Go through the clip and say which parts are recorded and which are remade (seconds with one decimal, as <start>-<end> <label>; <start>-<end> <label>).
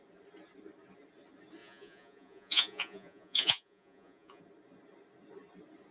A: 0.0-1.6 recorded; 1.6-4.4 remade; 4.4-5.9 recorded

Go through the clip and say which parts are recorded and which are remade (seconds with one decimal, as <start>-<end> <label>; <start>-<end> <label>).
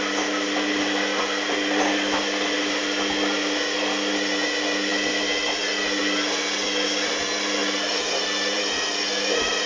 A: 0.0-7.6 recorded; 7.6-9.7 remade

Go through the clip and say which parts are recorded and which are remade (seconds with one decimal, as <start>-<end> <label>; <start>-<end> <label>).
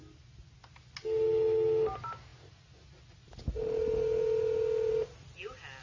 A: 0.0-5.8 recorded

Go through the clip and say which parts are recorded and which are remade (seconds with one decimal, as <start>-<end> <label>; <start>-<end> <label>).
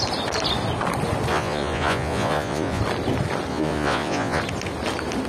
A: 0.0-1.3 recorded; 1.3-2.8 remade; 2.8-3.5 recorded; 3.5-4.4 remade; 4.4-5.3 recorded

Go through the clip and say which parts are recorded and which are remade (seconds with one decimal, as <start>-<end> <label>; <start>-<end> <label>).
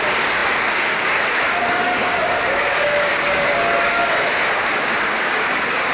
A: 0.0-4.0 remade; 4.0-4.8 recorded; 4.8-5.9 remade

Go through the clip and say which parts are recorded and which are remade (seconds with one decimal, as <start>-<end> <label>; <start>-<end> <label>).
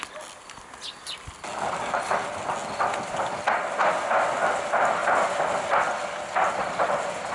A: 0.0-7.3 recorded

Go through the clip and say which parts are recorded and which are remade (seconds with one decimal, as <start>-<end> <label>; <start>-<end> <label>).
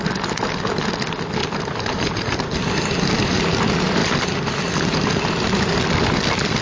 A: 0.0-1.4 recorded; 1.4-3.4 remade; 3.4-4.0 recorded; 4.0-5.2 remade; 5.2-6.6 recorded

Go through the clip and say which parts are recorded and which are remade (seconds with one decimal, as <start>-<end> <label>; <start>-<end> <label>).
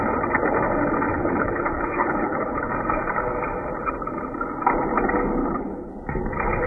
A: 0.0-1.1 recorded; 1.1-2.7 remade; 2.7-5.4 recorded; 5.4-5.9 remade; 5.9-6.7 recorded